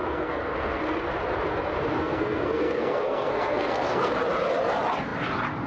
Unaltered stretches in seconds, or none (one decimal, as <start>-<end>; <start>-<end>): 0.8-2.0; 4.1-5.7